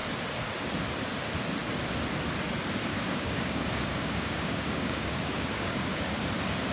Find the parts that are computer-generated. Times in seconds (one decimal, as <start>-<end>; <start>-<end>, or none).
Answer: 2.9-6.3